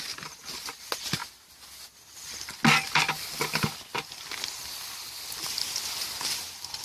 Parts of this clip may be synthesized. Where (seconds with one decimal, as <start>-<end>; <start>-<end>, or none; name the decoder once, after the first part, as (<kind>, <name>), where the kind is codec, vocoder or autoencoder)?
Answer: none

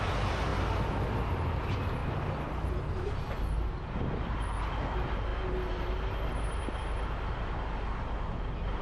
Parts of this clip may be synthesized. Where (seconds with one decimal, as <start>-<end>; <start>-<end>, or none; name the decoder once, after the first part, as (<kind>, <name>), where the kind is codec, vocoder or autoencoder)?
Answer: none

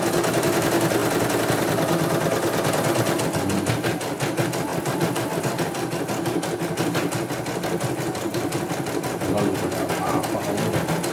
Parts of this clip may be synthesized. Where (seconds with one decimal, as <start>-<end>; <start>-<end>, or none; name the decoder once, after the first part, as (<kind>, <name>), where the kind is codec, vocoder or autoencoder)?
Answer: 8.3-9.3 (vocoder, BigVGAN v2)